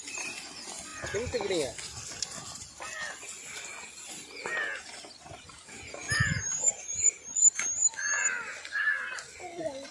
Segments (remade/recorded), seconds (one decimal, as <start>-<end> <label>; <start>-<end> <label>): 0.0-6.0 recorded; 6.0-7.4 remade; 7.4-8.5 recorded; 8.5-9.1 remade; 9.1-9.9 recorded